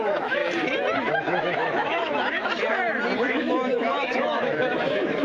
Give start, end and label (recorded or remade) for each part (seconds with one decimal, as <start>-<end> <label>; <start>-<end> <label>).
0.0-0.4 remade; 0.4-1.1 recorded; 1.1-2.5 remade; 2.5-3.2 recorded; 3.2-5.2 remade